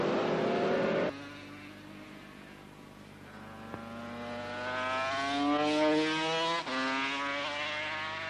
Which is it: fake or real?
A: real